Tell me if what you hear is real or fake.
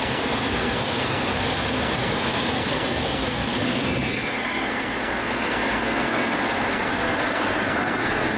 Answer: fake